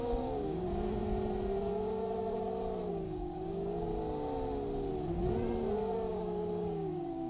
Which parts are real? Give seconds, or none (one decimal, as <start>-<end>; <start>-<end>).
1.0-2.9; 3.9-6.1